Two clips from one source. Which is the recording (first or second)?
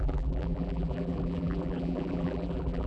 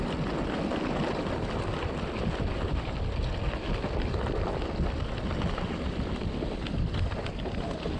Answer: second